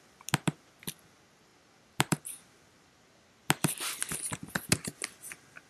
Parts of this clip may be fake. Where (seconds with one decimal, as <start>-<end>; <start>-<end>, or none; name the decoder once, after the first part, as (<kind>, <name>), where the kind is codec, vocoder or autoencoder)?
1.5-3.3 (vocoder, BigVGAN v2)